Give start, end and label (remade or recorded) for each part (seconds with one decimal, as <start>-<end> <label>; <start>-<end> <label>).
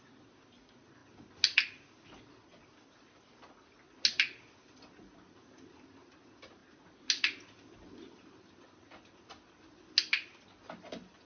0.0-11.3 recorded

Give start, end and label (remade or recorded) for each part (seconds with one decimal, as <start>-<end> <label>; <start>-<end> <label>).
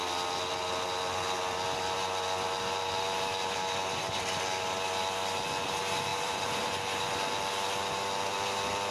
0.0-6.1 recorded; 6.1-7.0 remade; 7.0-8.9 recorded